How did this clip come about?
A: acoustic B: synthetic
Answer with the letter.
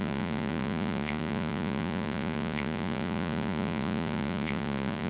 B